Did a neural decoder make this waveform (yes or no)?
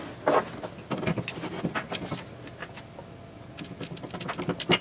no